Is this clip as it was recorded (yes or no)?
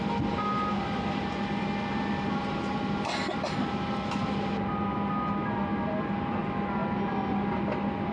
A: yes